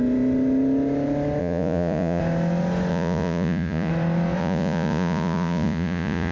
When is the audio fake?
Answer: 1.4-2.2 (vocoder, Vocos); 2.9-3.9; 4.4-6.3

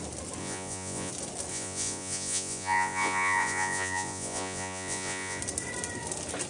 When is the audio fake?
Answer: 0.4-1.1 (vocoder, Vocos); 1.5-5.4

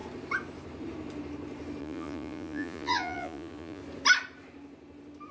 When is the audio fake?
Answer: 1.8-3.8 (vocoder, Vocos)

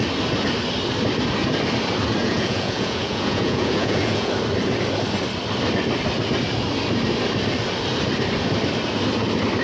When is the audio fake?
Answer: 2.2-4.3 (vocoder, Vocos)

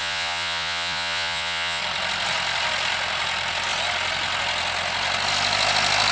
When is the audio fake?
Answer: 0.0-1.8 (vocoder, Vocos)

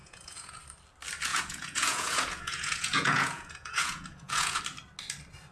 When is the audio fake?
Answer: 0.0-0.6 (vocoder, Vocos); 1.3-4.6